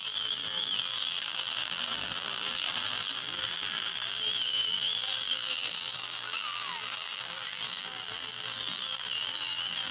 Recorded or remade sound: remade